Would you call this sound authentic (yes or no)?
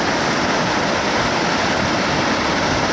yes